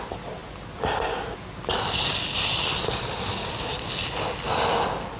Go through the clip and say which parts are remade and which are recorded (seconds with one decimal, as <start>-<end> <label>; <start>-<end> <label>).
0.0-5.2 recorded